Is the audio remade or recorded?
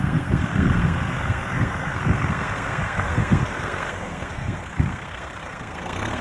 remade